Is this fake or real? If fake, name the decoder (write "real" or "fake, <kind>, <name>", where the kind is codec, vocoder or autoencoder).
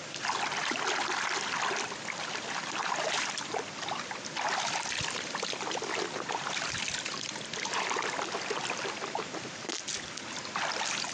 real